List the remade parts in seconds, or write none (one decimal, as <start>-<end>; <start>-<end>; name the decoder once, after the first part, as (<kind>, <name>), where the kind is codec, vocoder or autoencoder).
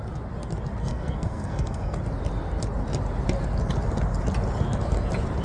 0.8-2.0 (codec, SNAC)